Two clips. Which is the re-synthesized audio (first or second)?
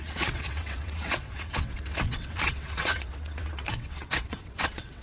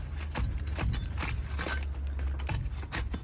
first